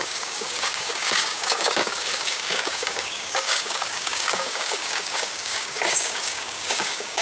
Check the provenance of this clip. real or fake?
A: fake